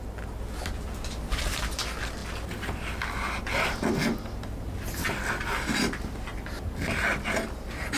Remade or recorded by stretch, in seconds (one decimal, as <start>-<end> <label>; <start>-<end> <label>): 0.0-8.0 recorded